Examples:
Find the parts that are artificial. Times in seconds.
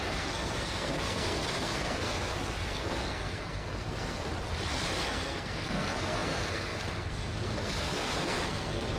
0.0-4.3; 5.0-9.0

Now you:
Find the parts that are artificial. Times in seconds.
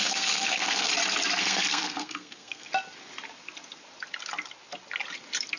0.0-0.9; 1.4-2.7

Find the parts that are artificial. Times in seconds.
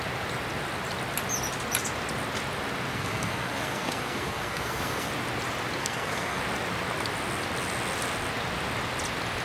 2.9-5.1; 5.8-6.4